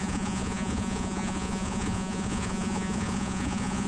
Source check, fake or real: fake